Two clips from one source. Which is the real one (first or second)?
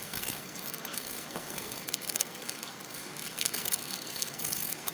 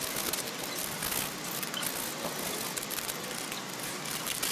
second